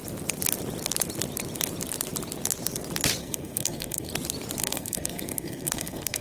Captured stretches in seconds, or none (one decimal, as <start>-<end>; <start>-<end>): 0.0-3.2; 4.1-4.6